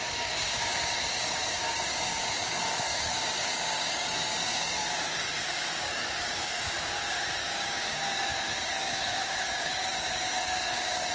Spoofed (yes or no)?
yes